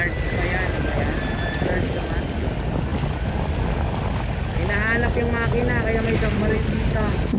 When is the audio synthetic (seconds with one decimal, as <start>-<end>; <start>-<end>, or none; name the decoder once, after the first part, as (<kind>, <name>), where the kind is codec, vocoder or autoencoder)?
none